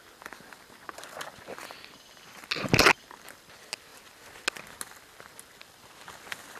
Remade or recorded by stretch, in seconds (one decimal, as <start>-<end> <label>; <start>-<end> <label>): 0.0-6.6 recorded